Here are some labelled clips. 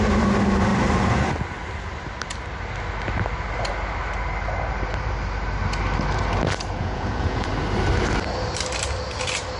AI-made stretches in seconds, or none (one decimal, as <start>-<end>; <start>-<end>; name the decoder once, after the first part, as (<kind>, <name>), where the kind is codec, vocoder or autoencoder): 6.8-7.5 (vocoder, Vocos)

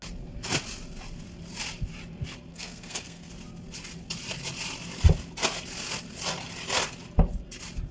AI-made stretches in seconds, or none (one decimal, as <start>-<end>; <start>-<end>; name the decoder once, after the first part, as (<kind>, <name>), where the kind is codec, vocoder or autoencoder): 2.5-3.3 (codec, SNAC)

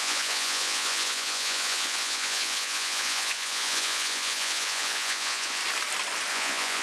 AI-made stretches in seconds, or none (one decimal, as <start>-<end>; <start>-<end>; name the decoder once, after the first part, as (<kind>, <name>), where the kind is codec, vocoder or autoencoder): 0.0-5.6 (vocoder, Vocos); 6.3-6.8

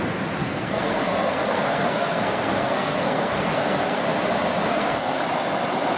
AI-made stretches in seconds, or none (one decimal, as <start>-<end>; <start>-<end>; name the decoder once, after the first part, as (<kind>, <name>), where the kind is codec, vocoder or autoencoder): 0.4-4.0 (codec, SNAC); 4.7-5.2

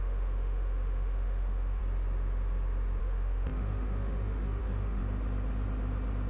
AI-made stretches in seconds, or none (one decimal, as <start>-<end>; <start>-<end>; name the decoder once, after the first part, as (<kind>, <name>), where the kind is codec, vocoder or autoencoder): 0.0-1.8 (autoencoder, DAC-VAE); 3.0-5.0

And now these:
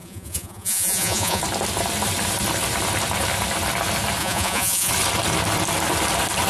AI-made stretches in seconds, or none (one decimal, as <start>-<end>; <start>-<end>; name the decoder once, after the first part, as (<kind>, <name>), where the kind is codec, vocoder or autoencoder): 0.0-1.4 (vocoder, Vocos); 4.2-4.9

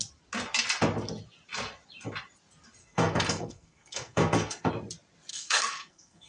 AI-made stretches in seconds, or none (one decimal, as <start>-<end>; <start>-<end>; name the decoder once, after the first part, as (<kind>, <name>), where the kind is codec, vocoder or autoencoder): 2.8-4.7 (codec, SNAC); 5.3-6.3